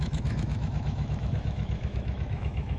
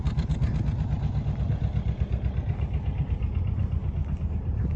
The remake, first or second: first